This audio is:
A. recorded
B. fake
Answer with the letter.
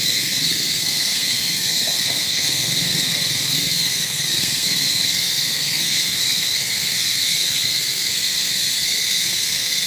B